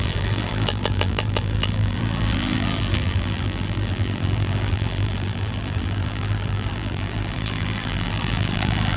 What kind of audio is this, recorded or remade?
remade